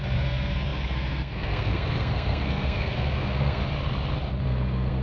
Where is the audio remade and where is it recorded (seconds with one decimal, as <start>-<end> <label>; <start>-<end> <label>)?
0.0-3.6 remade; 3.6-4.4 recorded; 4.4-5.0 remade